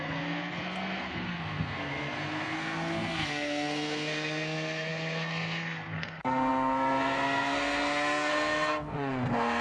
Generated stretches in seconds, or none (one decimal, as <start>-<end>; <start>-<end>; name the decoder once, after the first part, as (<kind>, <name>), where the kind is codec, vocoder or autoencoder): 0.0-9.6 (codec, SNAC)